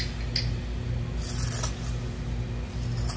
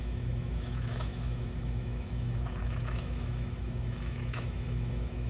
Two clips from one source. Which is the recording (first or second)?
first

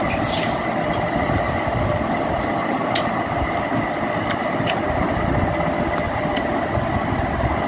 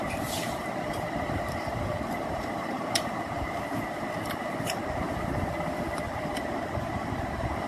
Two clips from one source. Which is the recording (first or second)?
first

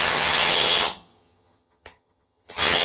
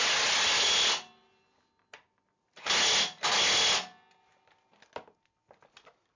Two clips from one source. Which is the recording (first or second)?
second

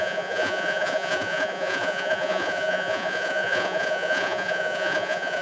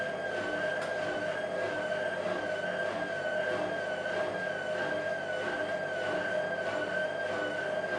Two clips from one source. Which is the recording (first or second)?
second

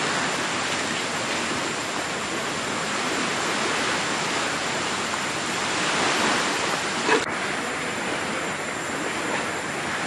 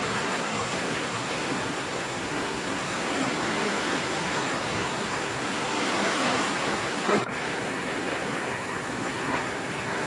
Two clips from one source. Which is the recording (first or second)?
first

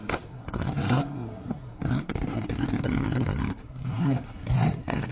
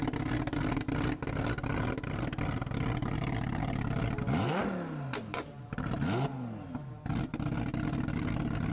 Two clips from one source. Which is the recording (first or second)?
second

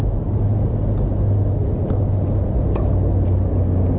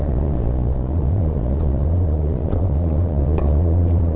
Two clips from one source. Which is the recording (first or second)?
first